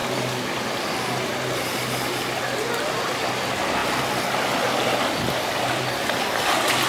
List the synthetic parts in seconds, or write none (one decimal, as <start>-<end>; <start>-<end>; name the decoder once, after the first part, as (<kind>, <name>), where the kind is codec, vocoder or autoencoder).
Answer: 3.8-5.8 (vocoder, BigVGAN v2)